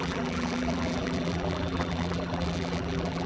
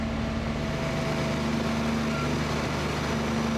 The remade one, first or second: first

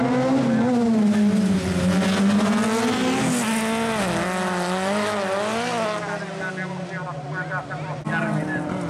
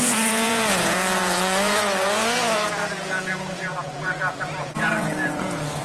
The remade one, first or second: second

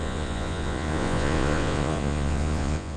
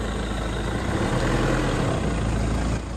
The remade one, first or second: first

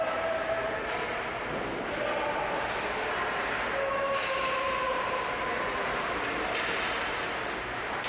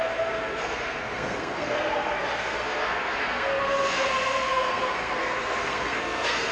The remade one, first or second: second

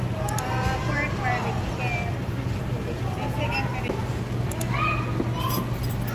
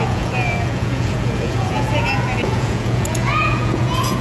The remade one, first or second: second